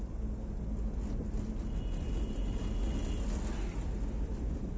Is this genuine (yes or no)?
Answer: yes